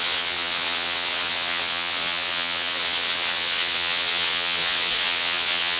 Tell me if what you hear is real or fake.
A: fake